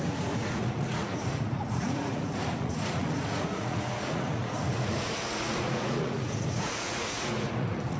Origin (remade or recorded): remade